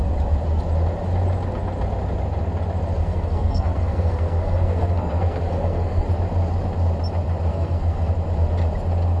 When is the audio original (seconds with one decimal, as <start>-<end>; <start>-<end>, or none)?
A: 0.0-3.0; 6.1-7.5; 8.1-9.2